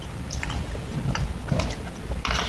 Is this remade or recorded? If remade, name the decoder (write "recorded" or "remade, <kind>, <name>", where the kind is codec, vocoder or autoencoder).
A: recorded